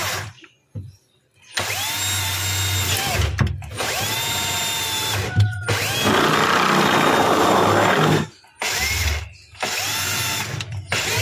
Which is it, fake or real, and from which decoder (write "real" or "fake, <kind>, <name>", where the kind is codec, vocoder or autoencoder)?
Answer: real